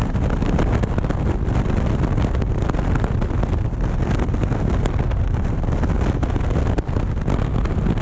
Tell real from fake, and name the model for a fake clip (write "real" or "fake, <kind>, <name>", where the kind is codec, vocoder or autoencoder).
real